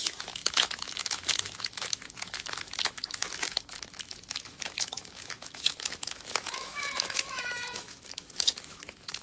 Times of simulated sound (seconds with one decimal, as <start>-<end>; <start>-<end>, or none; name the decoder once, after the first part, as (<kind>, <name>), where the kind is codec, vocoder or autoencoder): 0.0-9.2 (autoencoder, DAC-VAE)